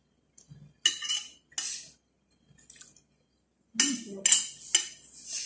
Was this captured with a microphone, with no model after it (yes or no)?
yes